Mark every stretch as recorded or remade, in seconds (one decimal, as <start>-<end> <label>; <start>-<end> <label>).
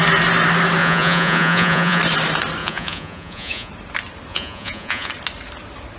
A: 0.0-0.8 recorded; 0.8-2.0 remade; 2.0-2.6 recorded; 2.6-3.7 remade; 3.7-4.3 recorded; 4.3-5.1 remade; 5.1-6.0 recorded